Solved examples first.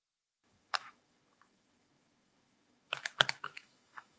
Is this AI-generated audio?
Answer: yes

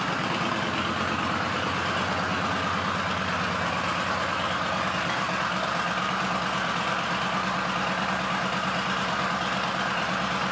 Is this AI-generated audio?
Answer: no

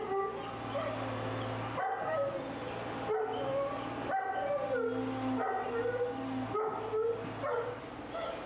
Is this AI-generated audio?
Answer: no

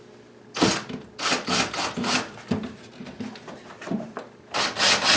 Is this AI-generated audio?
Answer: no